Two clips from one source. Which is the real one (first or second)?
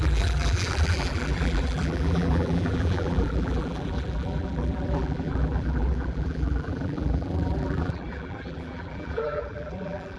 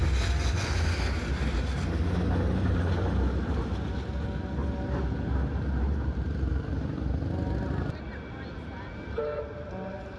second